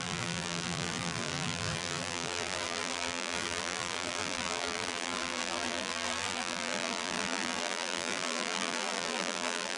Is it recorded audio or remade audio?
remade